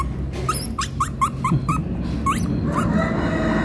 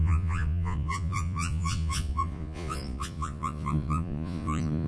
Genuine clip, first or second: first